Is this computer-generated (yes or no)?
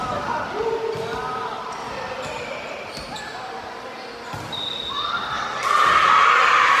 no